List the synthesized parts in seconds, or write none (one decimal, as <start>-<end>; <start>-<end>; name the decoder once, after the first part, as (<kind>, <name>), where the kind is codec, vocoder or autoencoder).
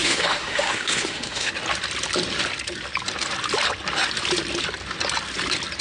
0.0-1.5 (autoencoder, DAC-VAE)